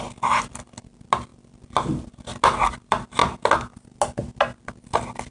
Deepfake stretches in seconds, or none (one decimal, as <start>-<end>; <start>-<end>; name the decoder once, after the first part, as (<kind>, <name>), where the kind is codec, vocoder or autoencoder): none